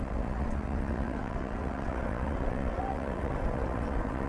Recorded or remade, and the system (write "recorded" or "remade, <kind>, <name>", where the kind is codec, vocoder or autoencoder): remade, vocoder, WaveNeXt